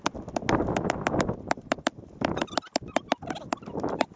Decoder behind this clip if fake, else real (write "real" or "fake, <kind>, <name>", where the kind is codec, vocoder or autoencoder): real